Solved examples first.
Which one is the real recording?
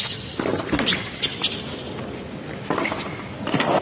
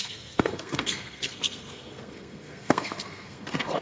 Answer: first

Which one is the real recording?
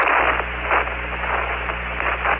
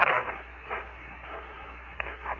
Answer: first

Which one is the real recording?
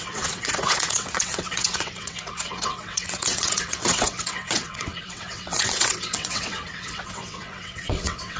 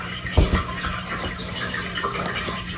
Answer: second